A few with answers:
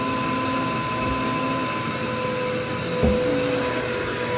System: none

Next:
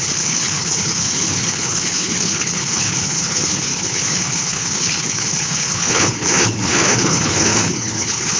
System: codec, HILCodec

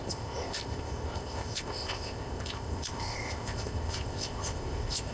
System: codec, ZipCodec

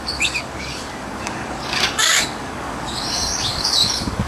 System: codec, DAC